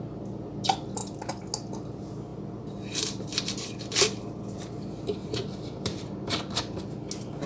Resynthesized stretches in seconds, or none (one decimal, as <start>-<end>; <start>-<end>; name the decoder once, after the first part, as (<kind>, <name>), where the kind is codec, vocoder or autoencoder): 2.3-6.0 (vocoder, BigVGAN v2)